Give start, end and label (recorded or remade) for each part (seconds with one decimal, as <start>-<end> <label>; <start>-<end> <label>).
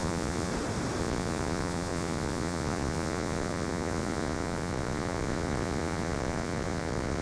0.0-0.5 remade; 0.5-1.0 recorded; 1.0-7.2 remade